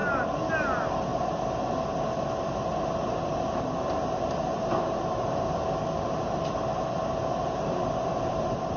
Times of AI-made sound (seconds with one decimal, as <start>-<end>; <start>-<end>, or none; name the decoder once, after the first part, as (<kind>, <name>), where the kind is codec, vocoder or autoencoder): none